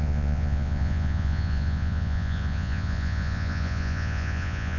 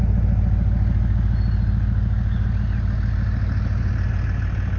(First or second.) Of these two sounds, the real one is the second